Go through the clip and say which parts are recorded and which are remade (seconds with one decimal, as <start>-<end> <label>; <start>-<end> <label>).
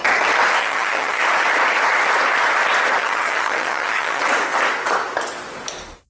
0.0-0.6 recorded; 0.6-1.2 remade; 1.2-3.0 recorded; 3.0-4.2 remade; 4.2-6.1 recorded